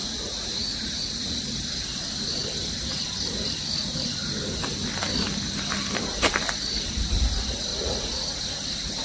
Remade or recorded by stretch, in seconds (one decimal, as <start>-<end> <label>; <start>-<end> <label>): 0.0-1.4 remade; 1.4-7.7 recorded; 7.7-8.4 remade; 8.4-9.0 recorded